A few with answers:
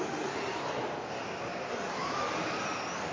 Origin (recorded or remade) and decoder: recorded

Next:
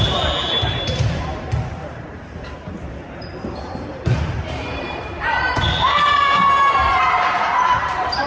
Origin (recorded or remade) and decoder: remade, vocoder, BigVGAN v2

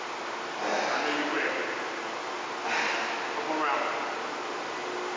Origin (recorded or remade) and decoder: recorded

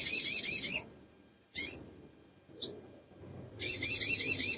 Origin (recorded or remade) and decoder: recorded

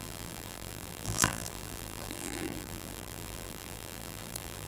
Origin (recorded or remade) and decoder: remade, vocoder, BigVGAN v2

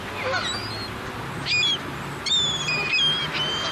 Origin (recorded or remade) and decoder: recorded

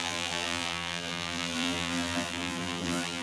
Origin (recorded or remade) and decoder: remade, vocoder, BigVGAN v2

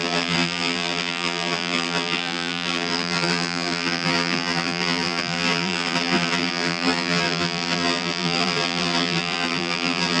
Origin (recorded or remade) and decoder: remade, vocoder, BigVGAN v2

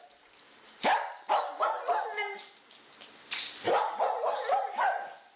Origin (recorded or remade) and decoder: recorded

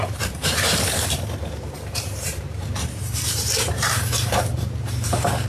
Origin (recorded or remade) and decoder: remade, vocoder, BigVGAN v2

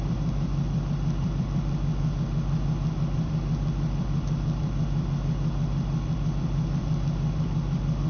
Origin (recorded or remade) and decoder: remade, vocoder, BigVGAN v2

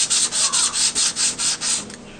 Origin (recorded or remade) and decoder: recorded